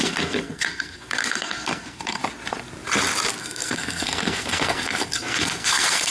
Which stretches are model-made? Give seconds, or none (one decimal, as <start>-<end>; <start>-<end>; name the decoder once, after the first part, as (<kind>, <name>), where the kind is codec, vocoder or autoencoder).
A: 0.0-2.2 (codec, SNAC); 3.4-6.1